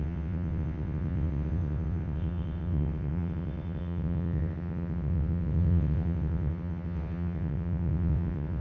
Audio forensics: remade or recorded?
remade